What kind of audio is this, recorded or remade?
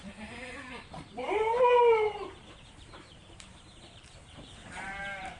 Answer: remade